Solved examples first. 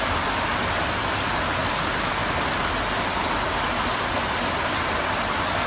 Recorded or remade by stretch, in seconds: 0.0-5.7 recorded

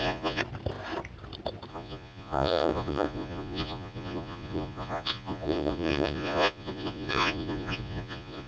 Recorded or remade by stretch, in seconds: 0.0-0.4 remade; 0.4-1.7 recorded; 1.7-8.5 remade

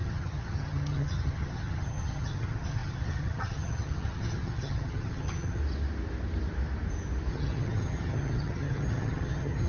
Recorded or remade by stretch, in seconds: 0.0-5.6 remade; 5.6-7.3 recorded; 7.3-9.7 remade

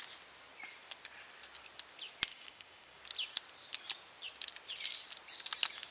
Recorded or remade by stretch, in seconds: 0.0-2.3 recorded; 2.3-3.0 remade; 3.0-5.9 recorded

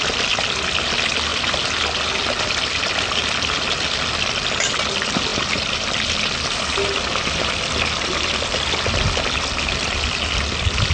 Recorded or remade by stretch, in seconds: 0.0-1.3 recorded; 1.3-2.9 remade; 2.9-10.9 recorded